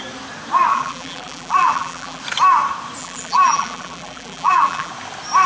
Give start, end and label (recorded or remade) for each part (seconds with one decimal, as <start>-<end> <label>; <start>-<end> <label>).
0.0-0.7 recorded; 0.7-2.2 remade; 2.2-3.0 recorded; 3.0-4.9 remade; 4.9-5.5 recorded